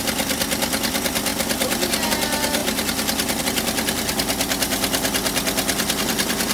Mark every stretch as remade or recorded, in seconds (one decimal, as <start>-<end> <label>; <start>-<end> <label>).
0.0-6.5 recorded